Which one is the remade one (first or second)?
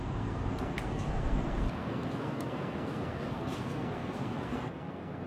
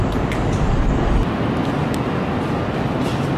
first